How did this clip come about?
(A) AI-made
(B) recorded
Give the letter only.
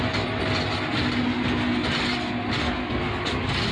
B